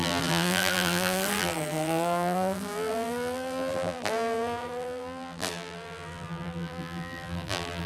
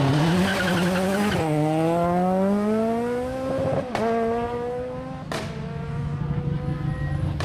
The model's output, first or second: first